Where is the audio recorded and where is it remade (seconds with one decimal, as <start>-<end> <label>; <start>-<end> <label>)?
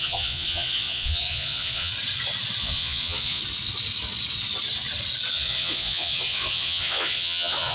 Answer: 0.0-1.9 remade; 1.9-2.6 recorded; 2.6-3.4 remade; 3.4-5.3 recorded; 5.3-7.7 remade